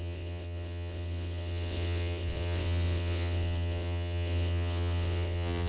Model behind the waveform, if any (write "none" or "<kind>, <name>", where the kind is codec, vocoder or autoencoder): vocoder, WaveNeXt